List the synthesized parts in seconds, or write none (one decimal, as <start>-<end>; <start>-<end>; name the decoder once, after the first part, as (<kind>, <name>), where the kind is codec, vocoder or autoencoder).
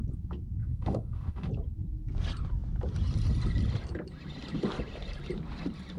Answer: 0.6-1.5 (autoencoder, DAC-VAE)